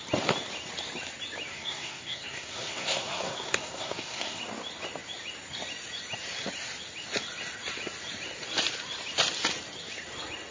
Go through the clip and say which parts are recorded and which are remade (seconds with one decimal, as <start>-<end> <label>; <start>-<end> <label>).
0.0-1.5 recorded; 1.5-4.4 remade; 4.4-10.5 recorded